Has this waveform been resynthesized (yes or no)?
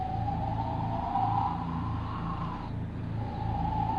no